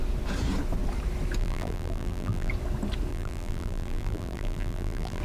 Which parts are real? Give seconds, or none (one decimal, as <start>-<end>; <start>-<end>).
0.0-1.4; 2.5-3.1